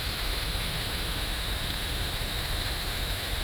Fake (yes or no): yes